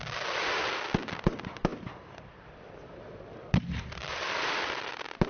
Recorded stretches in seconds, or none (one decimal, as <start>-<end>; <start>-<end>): 0.0-1.7